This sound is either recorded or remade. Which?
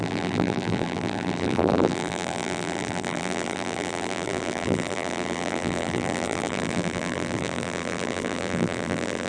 remade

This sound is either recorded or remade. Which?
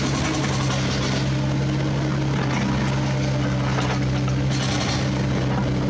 recorded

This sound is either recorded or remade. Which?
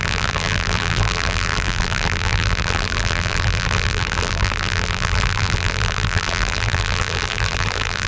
remade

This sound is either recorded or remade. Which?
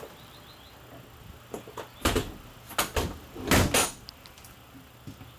recorded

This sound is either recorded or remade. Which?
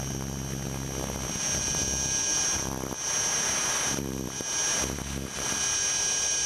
recorded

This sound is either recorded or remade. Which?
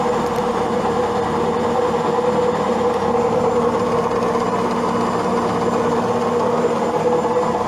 recorded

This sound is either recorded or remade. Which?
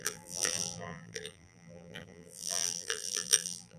remade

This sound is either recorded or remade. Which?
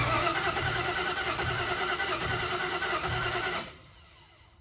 remade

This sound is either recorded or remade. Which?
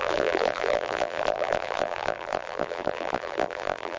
remade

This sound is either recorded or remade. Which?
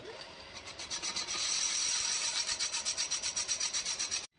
remade